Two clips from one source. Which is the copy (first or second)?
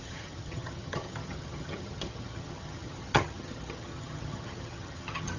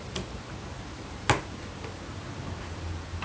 first